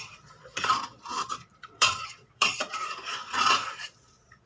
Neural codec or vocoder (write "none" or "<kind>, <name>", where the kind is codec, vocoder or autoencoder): vocoder, Vocos